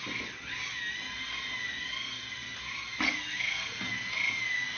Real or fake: real